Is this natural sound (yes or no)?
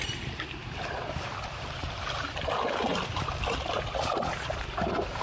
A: yes